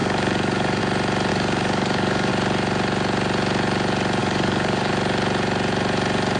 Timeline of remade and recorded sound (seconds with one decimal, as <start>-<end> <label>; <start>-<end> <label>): 0.0-0.8 remade; 0.8-1.3 recorded; 1.3-2.3 remade; 2.3-4.2 recorded; 4.2-4.9 remade; 4.9-6.4 recorded